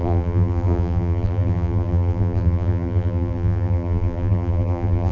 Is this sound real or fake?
fake